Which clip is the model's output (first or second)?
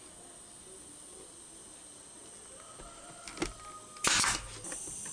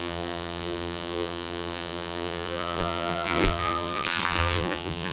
second